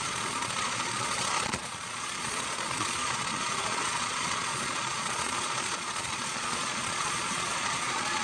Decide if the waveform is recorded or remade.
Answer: remade